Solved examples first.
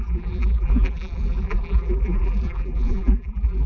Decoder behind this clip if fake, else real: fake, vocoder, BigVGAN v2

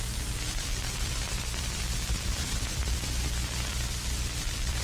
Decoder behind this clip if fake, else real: fake, vocoder, BigVGAN v2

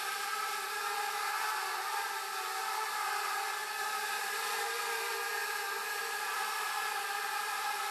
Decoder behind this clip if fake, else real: fake, vocoder, BigVGAN v2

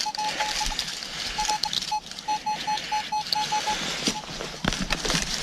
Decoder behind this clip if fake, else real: real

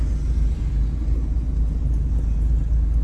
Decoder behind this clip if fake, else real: real